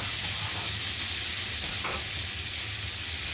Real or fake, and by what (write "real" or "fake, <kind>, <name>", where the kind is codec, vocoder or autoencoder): real